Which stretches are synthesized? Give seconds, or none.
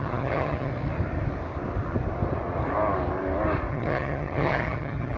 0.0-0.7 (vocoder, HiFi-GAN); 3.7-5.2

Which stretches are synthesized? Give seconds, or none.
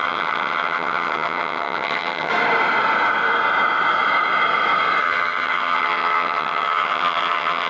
0.0-2.3 (vocoder, HiFi-GAN); 5.0-7.7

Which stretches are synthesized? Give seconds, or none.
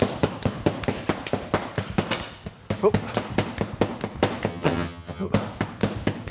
4.5-5.3 (vocoder, HiFi-GAN)